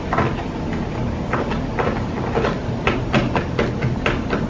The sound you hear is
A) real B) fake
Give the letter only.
A